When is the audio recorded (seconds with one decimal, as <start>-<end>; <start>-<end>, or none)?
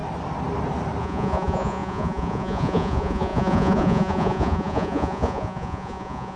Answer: 0.0-1.0